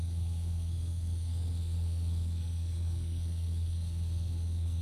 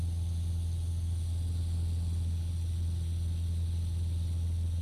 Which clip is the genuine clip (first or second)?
second